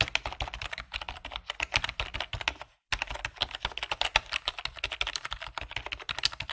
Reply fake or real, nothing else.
real